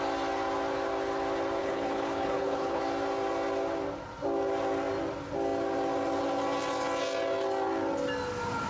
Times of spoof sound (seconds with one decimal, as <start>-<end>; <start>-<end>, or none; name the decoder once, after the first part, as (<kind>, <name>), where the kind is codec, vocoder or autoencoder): 1.6-2.8 (codec, HILCodec)